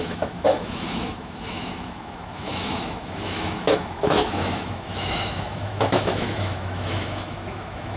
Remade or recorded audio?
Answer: remade